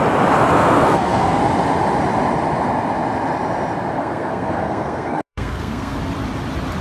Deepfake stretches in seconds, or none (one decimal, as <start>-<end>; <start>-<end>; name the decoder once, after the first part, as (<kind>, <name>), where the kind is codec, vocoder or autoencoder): 0.5-1.4 (codec, SNAC); 4.0-6.0